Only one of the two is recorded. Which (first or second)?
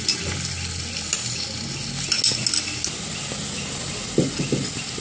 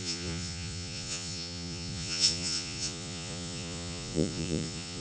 first